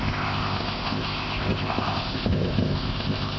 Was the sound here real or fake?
fake